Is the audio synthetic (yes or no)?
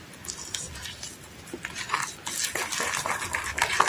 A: no